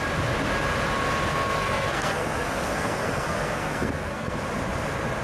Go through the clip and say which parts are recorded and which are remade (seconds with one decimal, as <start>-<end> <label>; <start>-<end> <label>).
0.0-1.3 recorded; 1.3-4.4 remade; 4.4-5.2 recorded